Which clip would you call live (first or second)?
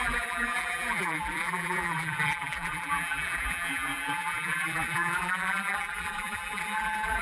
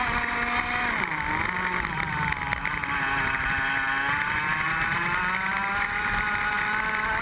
second